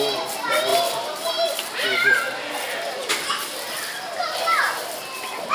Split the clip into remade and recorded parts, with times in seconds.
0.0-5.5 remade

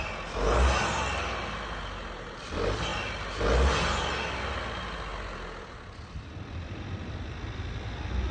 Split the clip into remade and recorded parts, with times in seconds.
0.0-5.1 recorded; 5.1-8.3 remade

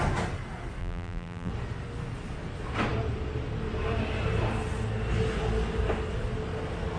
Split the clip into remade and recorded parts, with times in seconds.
0.0-0.8 recorded; 0.8-1.5 remade; 1.5-7.0 recorded

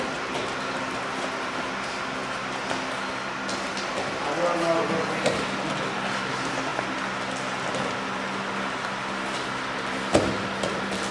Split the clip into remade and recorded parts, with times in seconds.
0.0-11.1 recorded

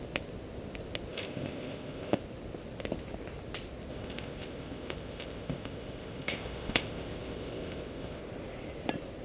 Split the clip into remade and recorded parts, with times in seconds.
0.0-1.1 recorded; 1.1-2.2 remade; 2.2-3.9 recorded; 3.9-8.2 remade; 8.2-9.2 recorded

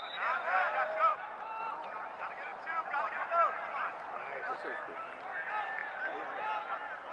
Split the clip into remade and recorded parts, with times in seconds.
0.0-7.1 remade

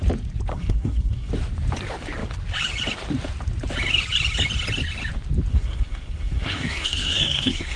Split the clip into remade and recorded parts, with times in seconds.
0.0-0.5 recorded; 0.5-1.3 remade; 1.3-5.5 recorded; 5.5-7.8 remade

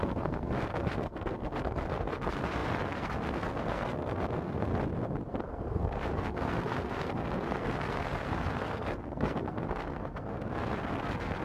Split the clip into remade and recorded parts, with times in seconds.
0.0-4.7 remade; 4.7-5.3 recorded; 5.3-11.4 remade